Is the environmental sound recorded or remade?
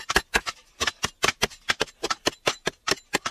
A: recorded